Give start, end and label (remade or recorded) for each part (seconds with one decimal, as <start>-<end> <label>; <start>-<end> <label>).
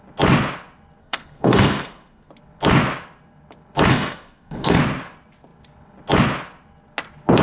0.0-1.0 recorded; 1.0-2.3 remade; 2.3-3.9 recorded; 3.9-4.8 remade; 4.8-7.4 recorded